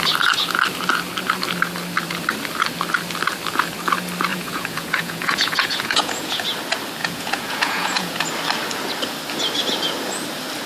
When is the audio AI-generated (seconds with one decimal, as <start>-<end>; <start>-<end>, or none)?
4.3-6.4; 7.0-8.2